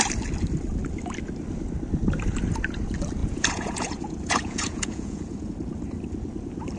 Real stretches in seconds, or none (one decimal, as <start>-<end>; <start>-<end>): 0.0-3.2; 5.5-6.8